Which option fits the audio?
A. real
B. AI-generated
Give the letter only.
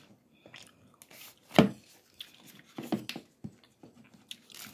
A